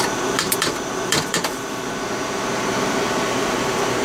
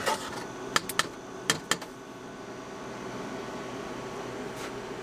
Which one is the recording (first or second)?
second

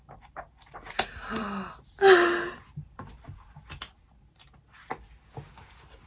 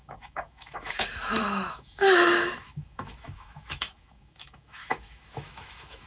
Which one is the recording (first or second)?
first